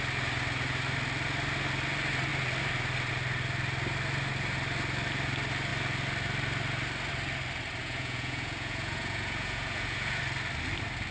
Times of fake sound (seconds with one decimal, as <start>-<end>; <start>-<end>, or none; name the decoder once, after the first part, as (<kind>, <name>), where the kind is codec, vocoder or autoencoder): 7.8-10.2 (vocoder, Vocos)